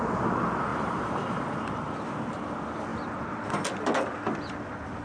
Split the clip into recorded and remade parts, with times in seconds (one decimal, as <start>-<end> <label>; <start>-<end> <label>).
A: 0.0-0.7 recorded; 0.7-1.4 remade; 1.4-5.0 recorded